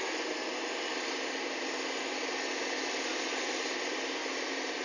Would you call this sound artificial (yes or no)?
no